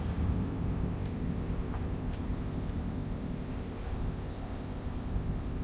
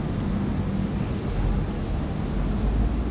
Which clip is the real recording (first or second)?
second